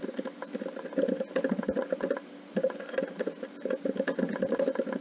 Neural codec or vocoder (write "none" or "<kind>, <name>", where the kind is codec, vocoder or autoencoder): none